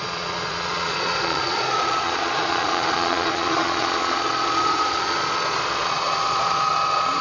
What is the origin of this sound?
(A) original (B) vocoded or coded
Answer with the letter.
B